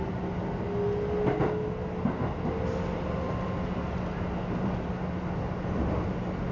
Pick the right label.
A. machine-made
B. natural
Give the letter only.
B